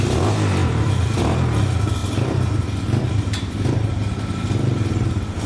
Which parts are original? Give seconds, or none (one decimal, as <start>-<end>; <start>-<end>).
0.0-0.6; 1.2-5.5